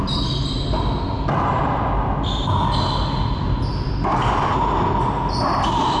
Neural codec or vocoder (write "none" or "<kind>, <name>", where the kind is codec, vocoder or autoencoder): none